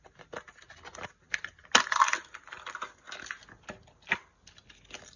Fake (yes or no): no